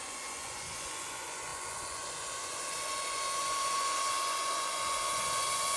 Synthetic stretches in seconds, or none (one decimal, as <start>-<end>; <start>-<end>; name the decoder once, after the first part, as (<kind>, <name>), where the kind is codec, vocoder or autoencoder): 0.0-5.8 (vocoder, Vocos)